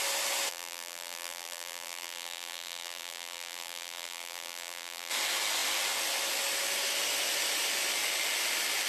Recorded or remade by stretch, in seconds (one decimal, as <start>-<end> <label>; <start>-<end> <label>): 0.0-0.5 recorded; 0.5-5.1 remade; 5.1-8.9 recorded